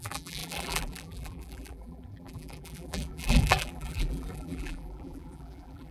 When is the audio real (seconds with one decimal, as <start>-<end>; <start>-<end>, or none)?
none